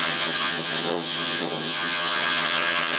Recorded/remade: remade